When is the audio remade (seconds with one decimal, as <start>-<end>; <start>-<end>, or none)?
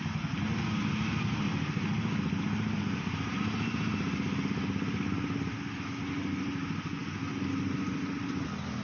none